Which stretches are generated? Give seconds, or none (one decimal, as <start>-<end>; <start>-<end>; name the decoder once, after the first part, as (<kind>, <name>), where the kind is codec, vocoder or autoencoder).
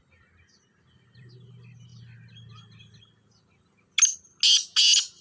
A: none